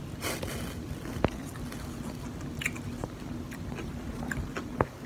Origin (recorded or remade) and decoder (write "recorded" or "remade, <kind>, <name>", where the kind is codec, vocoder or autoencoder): recorded